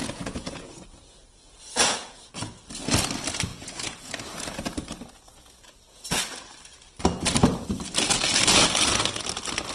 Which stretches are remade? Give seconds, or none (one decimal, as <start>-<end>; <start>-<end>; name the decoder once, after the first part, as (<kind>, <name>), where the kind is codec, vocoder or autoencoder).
0.0-2.2 (vocoder, Vocos); 3.5-4.2